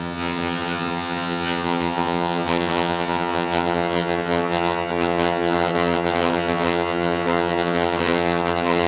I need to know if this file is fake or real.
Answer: fake